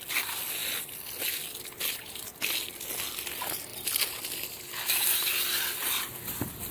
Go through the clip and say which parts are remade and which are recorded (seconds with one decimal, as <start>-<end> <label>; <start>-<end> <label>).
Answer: 0.0-6.7 recorded